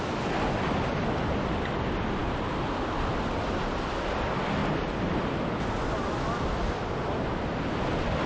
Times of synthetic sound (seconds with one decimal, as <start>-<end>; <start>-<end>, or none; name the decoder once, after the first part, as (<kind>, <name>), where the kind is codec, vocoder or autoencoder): none